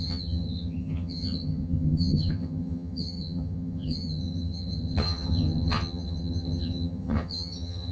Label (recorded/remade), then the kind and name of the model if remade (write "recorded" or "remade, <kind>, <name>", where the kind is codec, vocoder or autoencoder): remade, vocoder, HiFi-GAN